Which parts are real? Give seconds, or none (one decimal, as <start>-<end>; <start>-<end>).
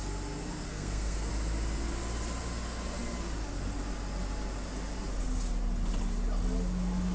0.0-0.7; 1.3-7.1